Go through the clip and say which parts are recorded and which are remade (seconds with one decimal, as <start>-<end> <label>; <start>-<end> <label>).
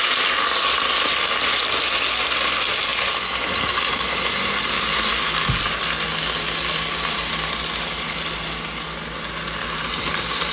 0.0-10.5 recorded